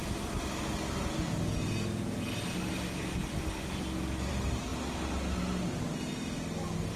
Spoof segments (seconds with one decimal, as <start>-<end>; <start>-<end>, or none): none

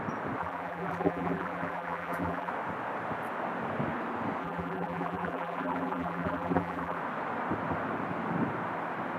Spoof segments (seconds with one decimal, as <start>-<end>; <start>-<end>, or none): 0.4-2.5; 4.4-7.0

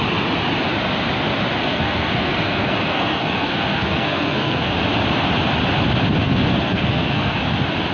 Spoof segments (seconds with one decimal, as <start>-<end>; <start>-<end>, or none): 1.6-4.7; 6.2-7.4

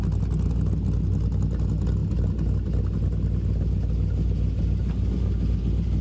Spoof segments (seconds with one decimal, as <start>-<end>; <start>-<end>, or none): none

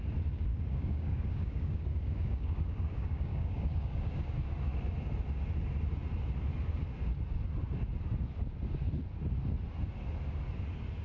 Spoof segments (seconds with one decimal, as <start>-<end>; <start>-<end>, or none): 0.5-4.3

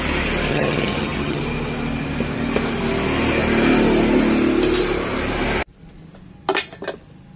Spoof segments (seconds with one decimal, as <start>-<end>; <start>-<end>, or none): 0.5-1.4